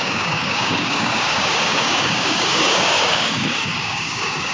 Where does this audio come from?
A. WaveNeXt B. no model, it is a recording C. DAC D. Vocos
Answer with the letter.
C